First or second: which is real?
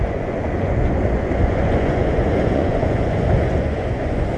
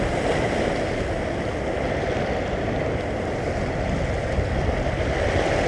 second